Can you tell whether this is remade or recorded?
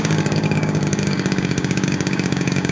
remade